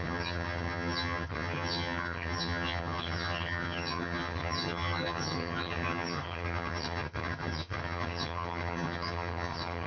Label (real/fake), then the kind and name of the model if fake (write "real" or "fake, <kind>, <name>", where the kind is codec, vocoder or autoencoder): fake, vocoder, HiFi-GAN